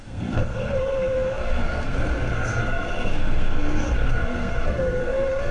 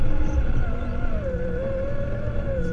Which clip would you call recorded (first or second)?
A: second